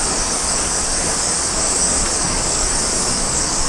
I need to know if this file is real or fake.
fake